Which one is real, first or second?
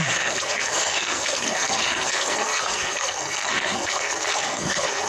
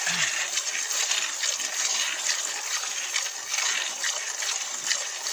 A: second